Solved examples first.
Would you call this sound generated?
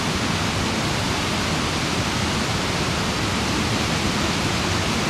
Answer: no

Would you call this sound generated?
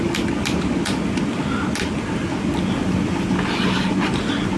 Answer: no